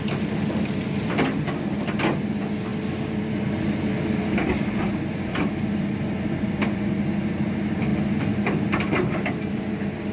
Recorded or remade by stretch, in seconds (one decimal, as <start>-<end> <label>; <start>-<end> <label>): 0.0-10.1 recorded